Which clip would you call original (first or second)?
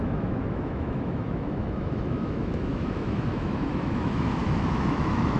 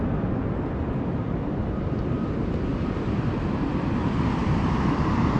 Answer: second